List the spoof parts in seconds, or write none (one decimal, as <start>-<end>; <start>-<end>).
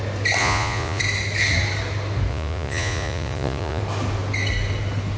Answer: 0.4-1.0; 2.3-3.8